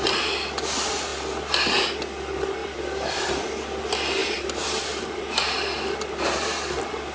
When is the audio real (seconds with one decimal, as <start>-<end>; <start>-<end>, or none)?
0.0-2.6; 3.8-4.2; 5.2-7.1